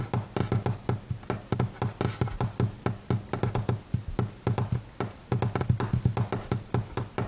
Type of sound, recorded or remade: recorded